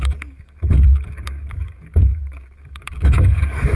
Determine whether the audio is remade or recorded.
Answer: remade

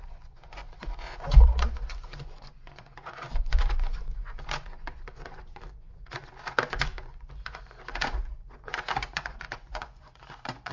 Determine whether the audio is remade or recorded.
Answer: remade